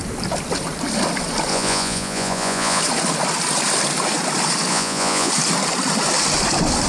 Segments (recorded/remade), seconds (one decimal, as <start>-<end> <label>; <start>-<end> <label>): 0.0-1.5 recorded; 1.5-2.8 remade; 2.8-4.7 recorded; 4.7-5.3 remade; 5.3-6.9 recorded